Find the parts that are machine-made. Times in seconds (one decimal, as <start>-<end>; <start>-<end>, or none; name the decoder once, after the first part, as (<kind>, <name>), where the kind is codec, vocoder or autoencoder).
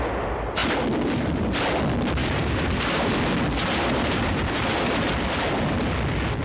2.2-3.1 (vocoder, BigVGAN v2); 3.6-5.1